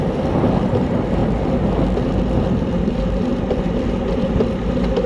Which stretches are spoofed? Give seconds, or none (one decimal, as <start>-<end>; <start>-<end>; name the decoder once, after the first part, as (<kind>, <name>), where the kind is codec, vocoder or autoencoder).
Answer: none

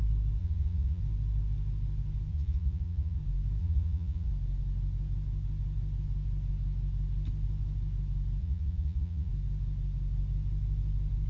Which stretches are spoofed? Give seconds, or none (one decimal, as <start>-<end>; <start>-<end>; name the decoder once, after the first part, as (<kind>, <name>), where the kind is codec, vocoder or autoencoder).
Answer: 0.4-1.0 (vocoder, Vocos); 2.3-3.2; 3.6-4.3; 8.4-9.3

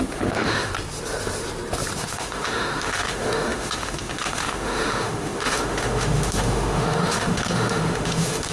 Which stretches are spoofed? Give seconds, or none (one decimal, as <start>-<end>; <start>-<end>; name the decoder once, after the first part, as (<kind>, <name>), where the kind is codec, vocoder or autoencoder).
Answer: 0.0-0.7 (autoencoder, DAC-VAE); 2.1-8.5

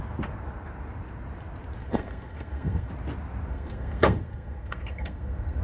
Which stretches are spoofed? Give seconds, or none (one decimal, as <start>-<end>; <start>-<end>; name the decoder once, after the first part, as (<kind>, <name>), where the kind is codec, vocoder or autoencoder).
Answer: 1.8-2.9 (codec, SNAC); 3.5-5.6

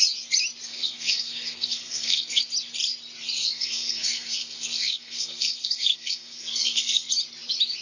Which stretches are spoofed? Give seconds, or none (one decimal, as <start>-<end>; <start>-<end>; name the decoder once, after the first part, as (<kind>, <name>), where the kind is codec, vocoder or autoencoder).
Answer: 0.7-2.4 (codec, SNAC); 3.4-7.1

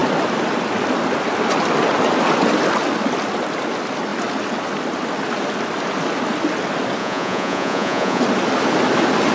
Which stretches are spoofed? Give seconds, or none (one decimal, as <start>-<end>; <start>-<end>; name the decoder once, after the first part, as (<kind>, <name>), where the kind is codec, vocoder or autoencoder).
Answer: 7.0-8.2 (vocoder, Vocos)

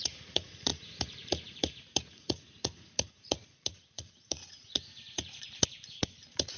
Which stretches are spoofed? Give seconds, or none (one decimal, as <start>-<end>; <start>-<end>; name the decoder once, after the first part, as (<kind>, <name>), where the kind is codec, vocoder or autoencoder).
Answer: 0.0-6.6 (vocoder, Vocos)

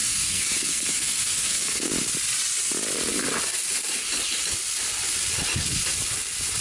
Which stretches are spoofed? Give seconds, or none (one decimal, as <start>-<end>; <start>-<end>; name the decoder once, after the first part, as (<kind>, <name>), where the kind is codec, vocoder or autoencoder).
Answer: 0.0-1.9 (codec, SNAC)